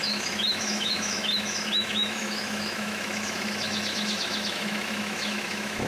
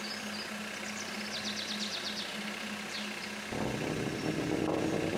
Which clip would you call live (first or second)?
second